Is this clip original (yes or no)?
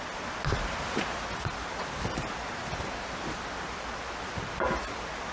yes